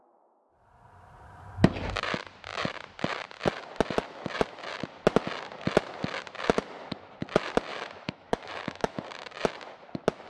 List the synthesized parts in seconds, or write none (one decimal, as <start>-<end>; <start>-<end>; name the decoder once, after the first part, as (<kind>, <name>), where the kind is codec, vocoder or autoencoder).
7.7-9.0 (autoencoder, DAC-VAE)